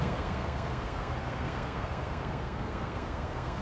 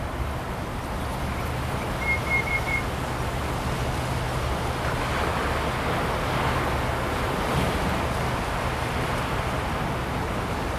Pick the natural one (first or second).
second